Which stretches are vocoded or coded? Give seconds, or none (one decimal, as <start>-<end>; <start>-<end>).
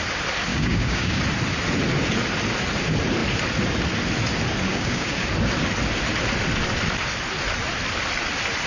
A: 0.5-1.2; 4.7-5.3